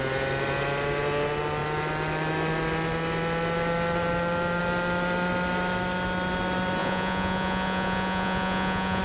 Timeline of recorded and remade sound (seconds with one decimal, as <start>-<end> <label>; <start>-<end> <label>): 0.0-6.8 recorded; 6.8-9.0 remade